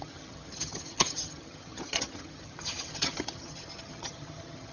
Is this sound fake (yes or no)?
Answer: yes